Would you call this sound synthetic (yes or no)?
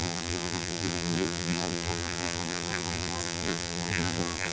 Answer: yes